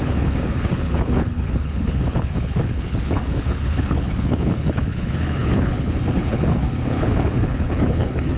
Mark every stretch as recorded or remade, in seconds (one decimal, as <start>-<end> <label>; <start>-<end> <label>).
0.0-8.4 remade